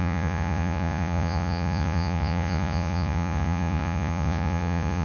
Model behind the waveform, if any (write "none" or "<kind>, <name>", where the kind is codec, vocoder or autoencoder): vocoder, Vocos